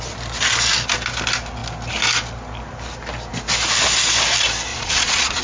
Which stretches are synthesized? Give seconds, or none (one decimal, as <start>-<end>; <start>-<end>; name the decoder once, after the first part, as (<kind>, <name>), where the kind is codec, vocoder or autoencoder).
4.7-5.4 (vocoder, Vocos)